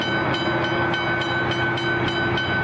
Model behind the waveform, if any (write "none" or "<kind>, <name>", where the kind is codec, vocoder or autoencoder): none